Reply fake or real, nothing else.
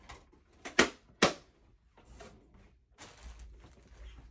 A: real